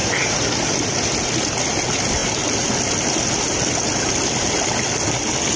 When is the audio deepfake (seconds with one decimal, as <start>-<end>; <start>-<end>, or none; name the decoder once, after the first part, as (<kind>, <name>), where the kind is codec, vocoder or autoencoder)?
0.0-0.5 (vocoder, Vocos)